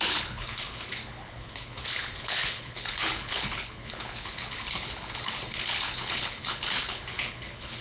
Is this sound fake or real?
fake